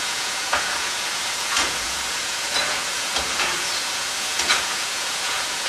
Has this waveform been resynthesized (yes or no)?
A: yes